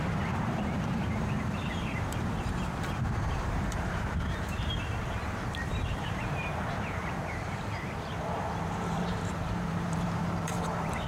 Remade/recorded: remade